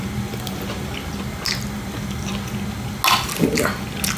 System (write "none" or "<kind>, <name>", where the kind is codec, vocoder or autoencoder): none